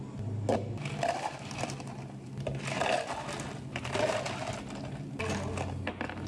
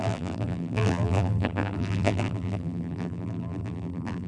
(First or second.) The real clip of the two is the first